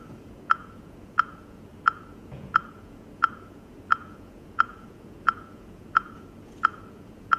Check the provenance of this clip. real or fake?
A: fake